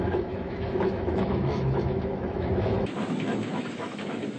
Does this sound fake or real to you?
fake